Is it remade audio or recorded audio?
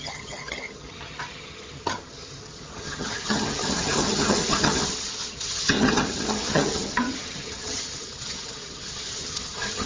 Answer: remade